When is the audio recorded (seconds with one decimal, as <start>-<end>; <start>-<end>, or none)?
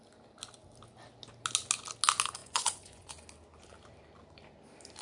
0.0-2.4; 3.1-5.0